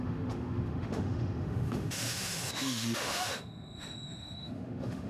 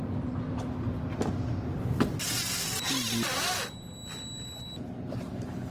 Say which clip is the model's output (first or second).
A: first